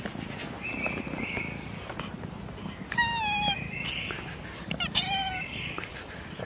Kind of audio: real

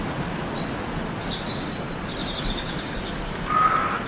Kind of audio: real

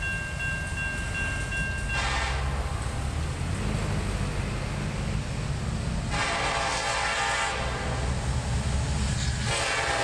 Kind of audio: real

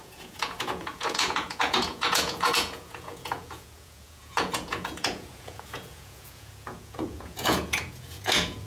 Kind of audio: fake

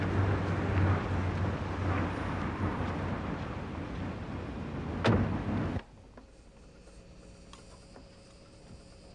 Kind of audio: real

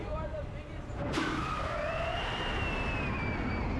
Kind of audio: real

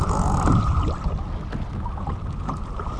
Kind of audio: real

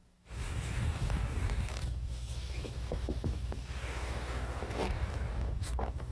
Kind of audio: fake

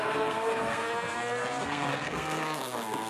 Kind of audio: fake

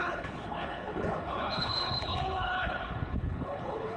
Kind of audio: fake